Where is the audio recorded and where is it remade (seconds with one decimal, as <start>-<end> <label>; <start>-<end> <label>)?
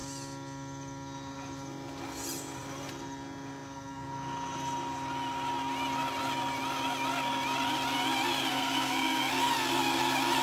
0.0-8.5 recorded; 8.5-9.3 remade; 9.3-10.4 recorded